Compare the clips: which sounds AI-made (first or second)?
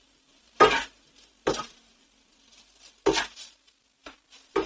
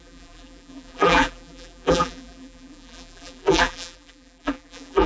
second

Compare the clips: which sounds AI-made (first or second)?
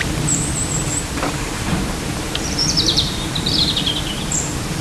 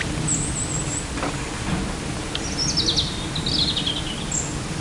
first